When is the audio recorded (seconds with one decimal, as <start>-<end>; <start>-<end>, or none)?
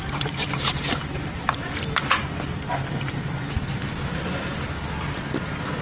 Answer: 3.5-5.8